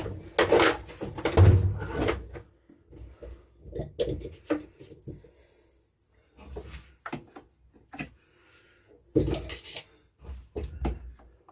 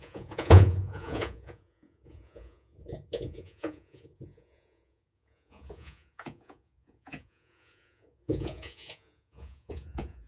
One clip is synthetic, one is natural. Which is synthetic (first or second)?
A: second